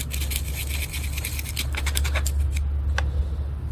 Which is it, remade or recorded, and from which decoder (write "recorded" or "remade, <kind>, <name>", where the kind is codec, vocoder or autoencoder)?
recorded